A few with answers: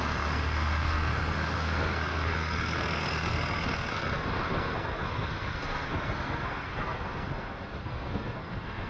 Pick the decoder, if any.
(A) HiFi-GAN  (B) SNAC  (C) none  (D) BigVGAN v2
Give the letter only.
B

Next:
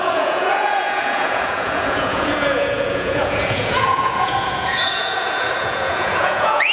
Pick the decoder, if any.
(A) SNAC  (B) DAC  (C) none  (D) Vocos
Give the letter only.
D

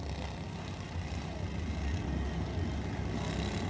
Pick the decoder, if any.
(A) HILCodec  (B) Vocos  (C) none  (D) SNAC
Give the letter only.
C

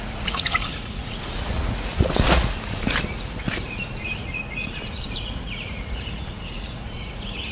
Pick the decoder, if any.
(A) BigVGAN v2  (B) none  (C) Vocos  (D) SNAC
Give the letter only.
C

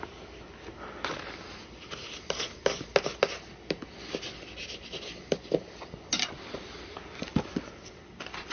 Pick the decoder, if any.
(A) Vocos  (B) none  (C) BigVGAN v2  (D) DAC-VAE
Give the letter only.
B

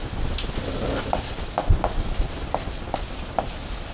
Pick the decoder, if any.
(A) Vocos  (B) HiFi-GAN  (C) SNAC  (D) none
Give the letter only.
D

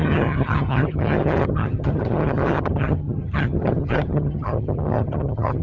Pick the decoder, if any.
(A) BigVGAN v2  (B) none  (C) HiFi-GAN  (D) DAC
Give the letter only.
C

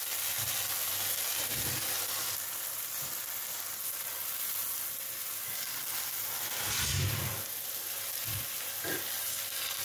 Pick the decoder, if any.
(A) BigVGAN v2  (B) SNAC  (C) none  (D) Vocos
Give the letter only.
C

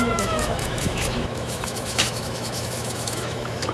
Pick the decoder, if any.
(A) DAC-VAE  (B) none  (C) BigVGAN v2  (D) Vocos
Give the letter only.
A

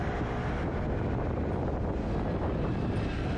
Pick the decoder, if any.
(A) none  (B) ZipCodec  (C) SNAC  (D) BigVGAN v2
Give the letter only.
A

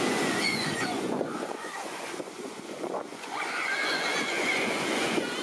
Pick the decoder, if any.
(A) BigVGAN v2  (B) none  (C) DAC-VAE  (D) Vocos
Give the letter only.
D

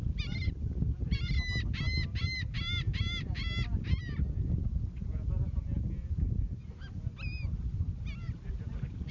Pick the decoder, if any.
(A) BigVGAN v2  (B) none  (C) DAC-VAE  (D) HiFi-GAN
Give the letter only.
B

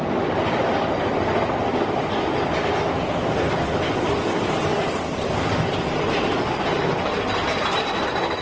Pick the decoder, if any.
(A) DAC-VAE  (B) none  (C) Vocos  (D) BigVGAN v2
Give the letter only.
B